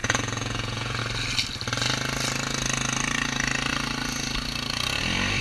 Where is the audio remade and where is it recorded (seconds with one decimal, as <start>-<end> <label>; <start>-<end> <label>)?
0.0-1.0 remade; 1.0-5.4 recorded